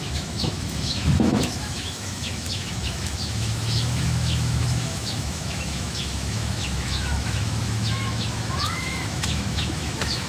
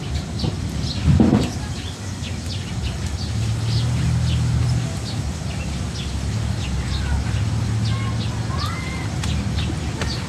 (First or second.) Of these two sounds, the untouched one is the second